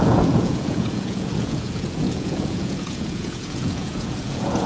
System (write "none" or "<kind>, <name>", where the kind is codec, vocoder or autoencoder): vocoder, Vocos